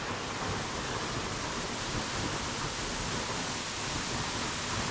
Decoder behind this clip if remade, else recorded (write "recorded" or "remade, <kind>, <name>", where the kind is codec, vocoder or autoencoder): recorded